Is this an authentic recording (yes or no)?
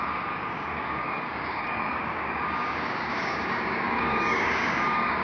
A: no